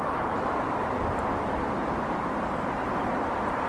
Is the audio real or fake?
fake